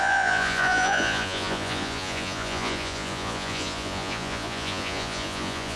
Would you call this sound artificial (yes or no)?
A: yes